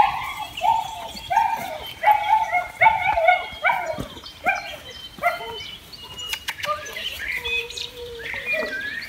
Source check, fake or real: fake